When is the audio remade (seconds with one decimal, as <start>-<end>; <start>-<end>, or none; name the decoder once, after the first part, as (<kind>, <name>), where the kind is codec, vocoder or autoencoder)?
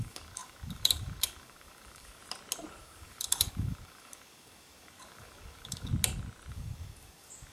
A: 0.0-2.2 (codec, DAC); 2.8-5.9; 6.5-7.5